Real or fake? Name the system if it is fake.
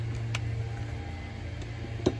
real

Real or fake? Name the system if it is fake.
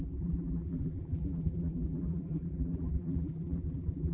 fake, vocoder, BigVGAN v2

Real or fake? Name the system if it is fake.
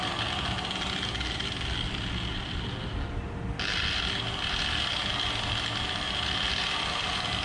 real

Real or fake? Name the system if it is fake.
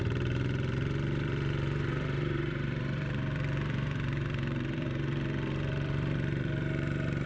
fake, vocoder, BigVGAN v2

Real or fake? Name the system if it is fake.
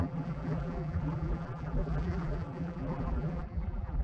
fake, vocoder, BigVGAN v2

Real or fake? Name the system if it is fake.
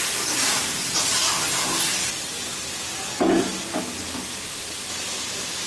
fake, vocoder, BigVGAN v2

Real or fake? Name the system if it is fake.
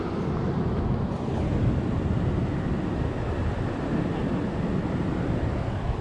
real